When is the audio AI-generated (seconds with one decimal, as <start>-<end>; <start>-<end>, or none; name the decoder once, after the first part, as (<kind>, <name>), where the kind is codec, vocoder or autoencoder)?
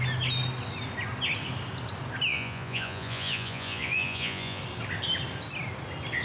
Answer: 2.3-4.6 (vocoder, Vocos)